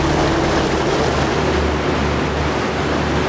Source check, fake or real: real